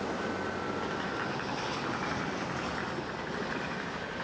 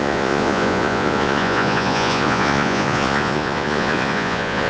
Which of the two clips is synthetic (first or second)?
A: second